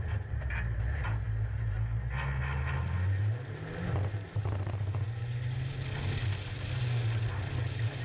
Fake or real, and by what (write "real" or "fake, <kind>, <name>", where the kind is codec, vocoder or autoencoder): real